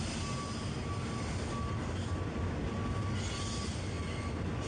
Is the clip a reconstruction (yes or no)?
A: no